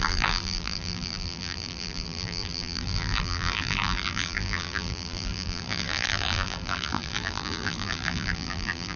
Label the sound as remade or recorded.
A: remade